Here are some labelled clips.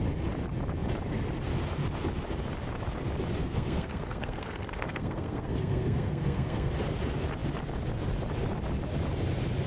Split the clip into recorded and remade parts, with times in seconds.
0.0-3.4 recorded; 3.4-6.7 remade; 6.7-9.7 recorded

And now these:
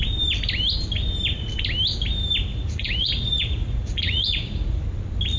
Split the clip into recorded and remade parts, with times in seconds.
0.0-2.5 recorded; 2.5-4.8 remade; 4.8-5.4 recorded

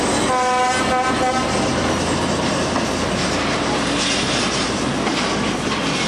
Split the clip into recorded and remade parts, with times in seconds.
0.0-6.1 recorded